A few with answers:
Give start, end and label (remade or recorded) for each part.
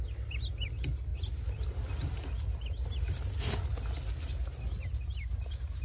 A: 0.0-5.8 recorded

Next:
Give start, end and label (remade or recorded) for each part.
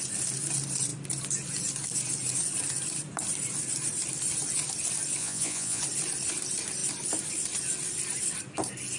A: 0.0-5.2 recorded; 5.2-5.8 remade; 5.8-9.0 recorded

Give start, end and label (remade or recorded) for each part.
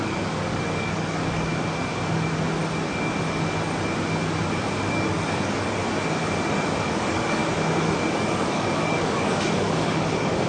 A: 0.0-1.5 remade; 1.5-4.9 recorded; 4.9-5.8 remade; 5.8-6.5 recorded; 6.5-7.4 remade; 7.4-8.1 recorded; 8.1-10.5 remade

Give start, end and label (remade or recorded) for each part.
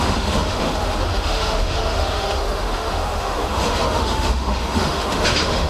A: 0.0-5.7 remade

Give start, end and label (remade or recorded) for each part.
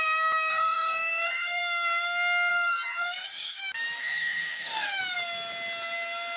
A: 0.0-0.5 recorded; 0.5-1.6 remade; 1.6-2.5 recorded; 2.5-3.6 remade; 3.6-4.0 recorded; 4.0-5.0 remade; 5.0-6.4 recorded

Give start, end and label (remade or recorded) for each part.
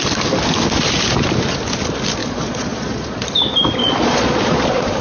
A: 0.0-2.2 recorded; 2.2-3.3 remade; 3.3-3.8 recorded; 3.8-5.0 remade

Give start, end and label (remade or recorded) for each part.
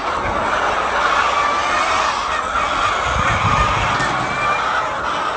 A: 0.0-5.4 recorded